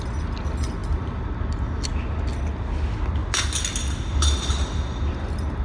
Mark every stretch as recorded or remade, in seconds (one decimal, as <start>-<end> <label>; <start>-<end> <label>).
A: 0.0-5.6 recorded